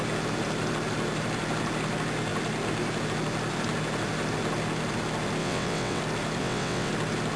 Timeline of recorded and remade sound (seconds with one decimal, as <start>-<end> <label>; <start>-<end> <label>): 0.0-5.4 recorded; 5.4-6.0 remade; 6.0-6.4 recorded; 6.4-6.9 remade; 6.9-7.4 recorded